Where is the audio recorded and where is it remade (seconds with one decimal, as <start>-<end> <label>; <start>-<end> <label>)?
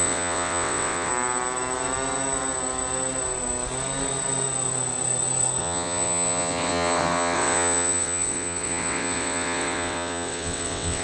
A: 0.0-1.1 remade; 1.1-5.6 recorded; 5.6-11.0 remade